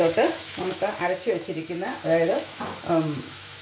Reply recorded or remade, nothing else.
remade